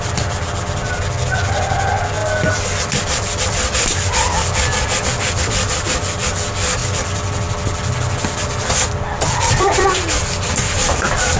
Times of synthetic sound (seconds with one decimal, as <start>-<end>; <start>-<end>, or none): none